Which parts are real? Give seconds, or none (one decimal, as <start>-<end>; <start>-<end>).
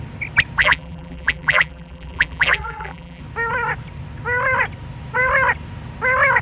0.0-0.6; 3.2-6.4